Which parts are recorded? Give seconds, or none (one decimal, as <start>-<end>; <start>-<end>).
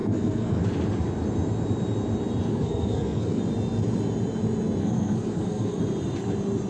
0.6-2.5; 3.4-4.8; 5.8-6.7